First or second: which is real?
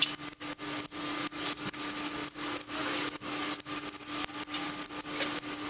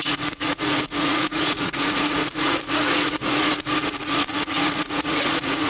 first